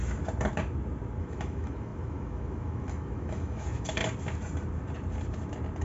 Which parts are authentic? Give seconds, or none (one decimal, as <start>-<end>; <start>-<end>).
0.0-1.2; 4.0-5.8